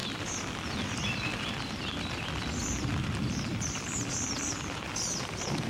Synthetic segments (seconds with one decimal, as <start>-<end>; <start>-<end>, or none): 0.0-3.1; 3.5-5.7